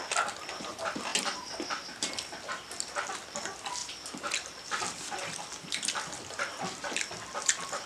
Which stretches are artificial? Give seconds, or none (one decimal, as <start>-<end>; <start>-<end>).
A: 3.8-4.6